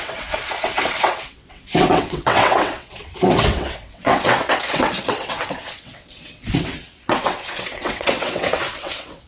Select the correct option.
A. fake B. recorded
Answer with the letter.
A